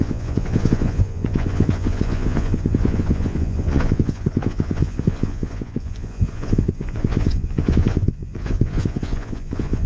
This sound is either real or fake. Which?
fake